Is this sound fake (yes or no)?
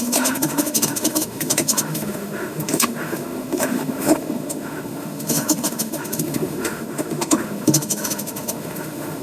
yes